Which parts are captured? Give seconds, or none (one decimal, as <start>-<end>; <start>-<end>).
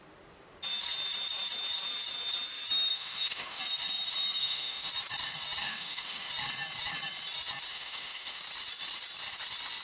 0.0-2.9; 3.6-4.4; 4.9-5.6; 6.3-7.7; 8.4-9.8